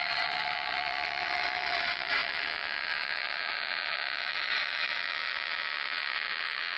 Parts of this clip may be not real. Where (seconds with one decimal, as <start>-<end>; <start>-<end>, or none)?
0.0-6.8